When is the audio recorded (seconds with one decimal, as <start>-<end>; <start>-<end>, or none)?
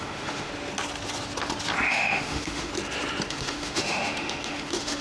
0.5-1.9; 2.7-3.3